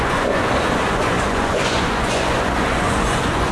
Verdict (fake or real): fake